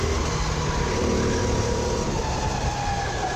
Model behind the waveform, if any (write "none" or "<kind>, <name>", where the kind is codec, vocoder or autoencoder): none